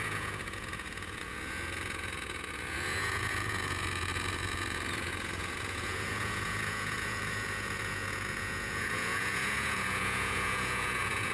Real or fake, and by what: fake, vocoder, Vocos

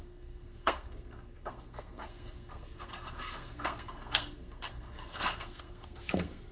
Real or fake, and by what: fake, codec, SNAC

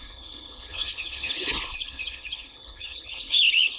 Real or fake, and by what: fake, codec, HILCodec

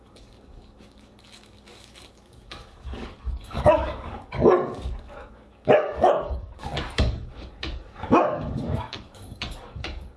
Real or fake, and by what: fake, codec, DAC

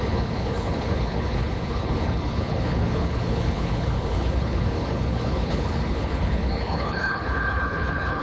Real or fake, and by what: fake, codec, HILCodec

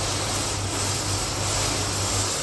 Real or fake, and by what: real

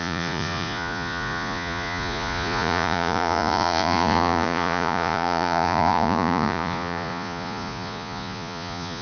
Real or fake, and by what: fake, vocoder, Vocos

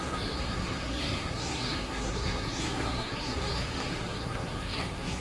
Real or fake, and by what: fake, codec, SNAC